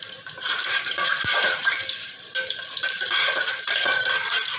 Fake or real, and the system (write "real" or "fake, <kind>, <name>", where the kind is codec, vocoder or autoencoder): fake, vocoder, BigVGAN v2